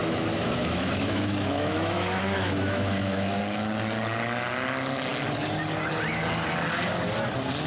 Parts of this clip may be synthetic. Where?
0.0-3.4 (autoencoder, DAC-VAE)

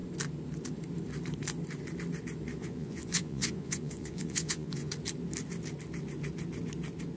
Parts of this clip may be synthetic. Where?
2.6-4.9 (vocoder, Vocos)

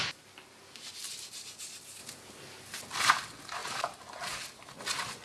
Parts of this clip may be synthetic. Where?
none

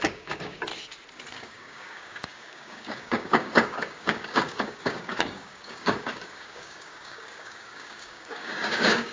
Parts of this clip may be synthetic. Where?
0.0-0.7 (codec, DAC); 1.3-9.1

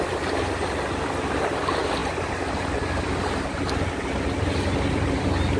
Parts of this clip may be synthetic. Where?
none

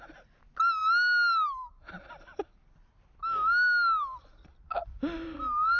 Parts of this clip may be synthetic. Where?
0.8-1.7 (autoencoder, DAC-VAE)

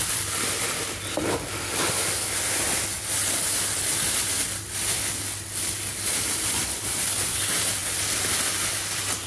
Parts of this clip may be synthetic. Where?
none

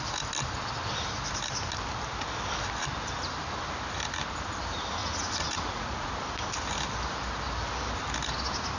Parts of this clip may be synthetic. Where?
5.0-6.1 (vocoder, Vocos)